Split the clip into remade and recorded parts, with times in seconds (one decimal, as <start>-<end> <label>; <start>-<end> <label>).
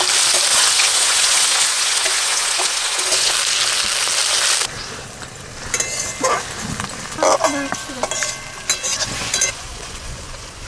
0.0-0.5 recorded; 0.5-3.3 remade; 3.3-8.9 recorded; 8.9-10.7 remade